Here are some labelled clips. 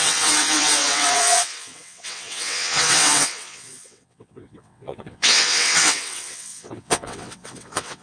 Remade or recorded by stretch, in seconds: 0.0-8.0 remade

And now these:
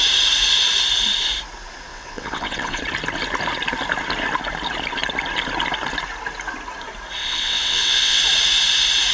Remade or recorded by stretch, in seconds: 0.0-1.9 recorded; 1.9-2.8 remade; 2.8-7.2 recorded; 7.2-8.2 remade; 8.2-9.1 recorded

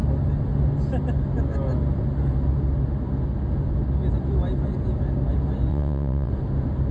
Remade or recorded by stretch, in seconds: 0.0-5.7 recorded; 5.7-6.3 remade; 6.3-6.9 recorded